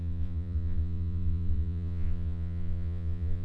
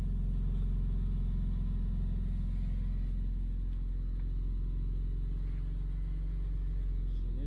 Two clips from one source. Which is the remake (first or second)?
first